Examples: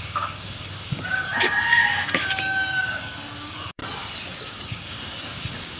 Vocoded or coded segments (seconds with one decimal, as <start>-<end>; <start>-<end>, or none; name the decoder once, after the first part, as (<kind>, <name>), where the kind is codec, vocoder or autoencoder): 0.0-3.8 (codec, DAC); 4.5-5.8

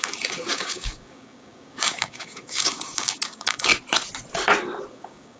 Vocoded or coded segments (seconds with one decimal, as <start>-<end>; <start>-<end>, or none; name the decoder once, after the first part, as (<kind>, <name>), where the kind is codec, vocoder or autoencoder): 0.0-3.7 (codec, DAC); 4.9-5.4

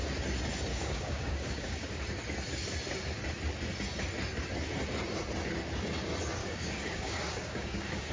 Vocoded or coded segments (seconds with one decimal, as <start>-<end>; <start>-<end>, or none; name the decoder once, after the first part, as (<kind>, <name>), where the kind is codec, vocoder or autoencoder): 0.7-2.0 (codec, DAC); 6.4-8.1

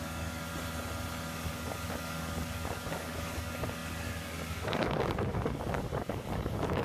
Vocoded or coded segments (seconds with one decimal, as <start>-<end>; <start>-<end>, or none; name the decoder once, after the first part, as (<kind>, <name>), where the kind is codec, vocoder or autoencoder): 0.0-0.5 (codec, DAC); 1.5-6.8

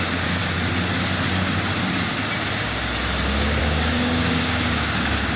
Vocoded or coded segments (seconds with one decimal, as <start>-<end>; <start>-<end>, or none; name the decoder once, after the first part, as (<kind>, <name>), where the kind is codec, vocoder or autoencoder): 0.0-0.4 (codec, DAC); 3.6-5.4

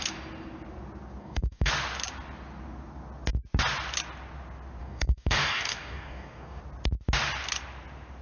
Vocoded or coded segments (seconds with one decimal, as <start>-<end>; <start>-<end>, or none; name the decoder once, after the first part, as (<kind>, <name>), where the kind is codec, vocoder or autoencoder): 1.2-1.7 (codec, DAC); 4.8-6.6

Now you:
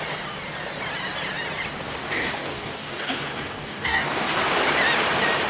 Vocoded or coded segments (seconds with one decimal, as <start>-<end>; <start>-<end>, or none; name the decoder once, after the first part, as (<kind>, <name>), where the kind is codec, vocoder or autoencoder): 2.0-4.4 (codec, DAC)